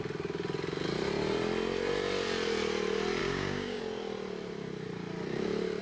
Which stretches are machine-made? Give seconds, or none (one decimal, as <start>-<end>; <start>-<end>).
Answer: 3.2-3.8